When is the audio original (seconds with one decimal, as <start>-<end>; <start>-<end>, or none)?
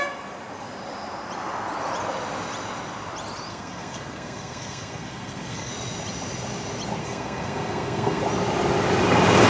0.0-3.5; 5.7-7.0; 8.2-9.5